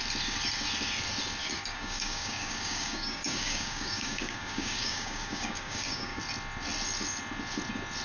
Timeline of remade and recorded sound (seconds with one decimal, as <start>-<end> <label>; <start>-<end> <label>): 0.0-1.4 recorded; 1.4-6.2 remade; 6.2-8.0 recorded